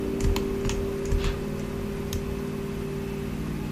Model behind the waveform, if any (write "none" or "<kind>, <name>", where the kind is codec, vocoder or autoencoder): none